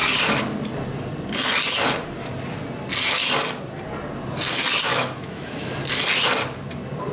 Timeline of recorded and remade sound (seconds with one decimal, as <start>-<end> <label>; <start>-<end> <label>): 0.0-4.9 recorded; 4.9-5.7 remade; 5.7-7.1 recorded